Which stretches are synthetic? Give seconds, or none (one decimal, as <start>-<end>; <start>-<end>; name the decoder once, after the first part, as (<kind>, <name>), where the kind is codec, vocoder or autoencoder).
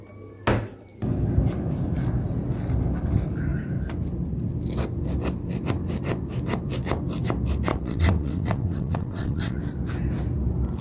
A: 7.7-9.6 (vocoder, WaveNeXt)